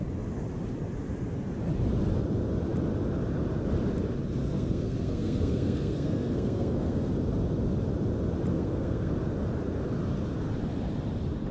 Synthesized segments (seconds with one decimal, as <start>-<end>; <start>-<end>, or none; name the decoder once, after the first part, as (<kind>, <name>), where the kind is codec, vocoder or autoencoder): 4.4-7.1 (codec, SNAC); 8.5-9.1